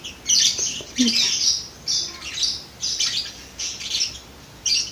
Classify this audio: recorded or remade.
recorded